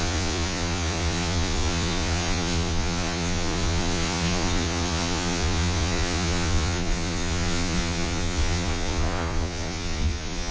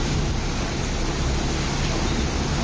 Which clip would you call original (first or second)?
second